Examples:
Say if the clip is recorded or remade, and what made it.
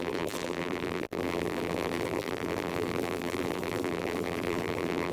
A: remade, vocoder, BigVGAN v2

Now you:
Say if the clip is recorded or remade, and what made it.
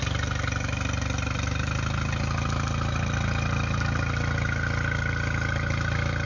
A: recorded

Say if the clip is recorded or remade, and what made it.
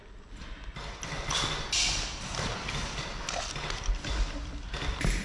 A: recorded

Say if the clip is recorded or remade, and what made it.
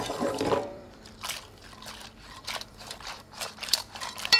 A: remade, vocoder, BigVGAN v2